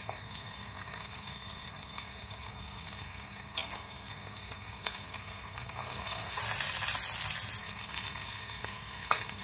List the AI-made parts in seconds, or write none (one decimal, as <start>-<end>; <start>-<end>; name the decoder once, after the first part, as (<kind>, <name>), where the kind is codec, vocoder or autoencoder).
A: 0.0-6.4 (codec, SNAC); 7.6-9.4